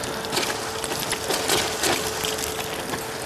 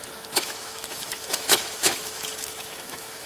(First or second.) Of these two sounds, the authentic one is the first